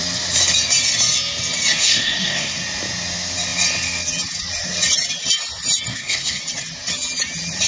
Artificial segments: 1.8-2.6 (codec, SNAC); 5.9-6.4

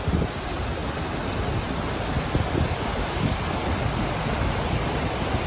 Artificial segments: none

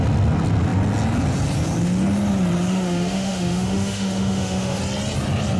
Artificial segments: 2.7-4.8 (autoencoder, DAC-VAE)

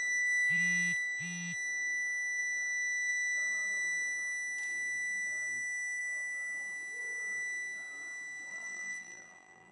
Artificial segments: 8.5-9.7 (vocoder, BigVGAN v2)